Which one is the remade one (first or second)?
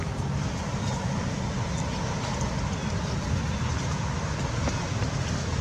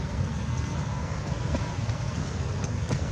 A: second